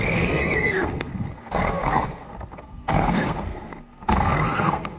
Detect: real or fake fake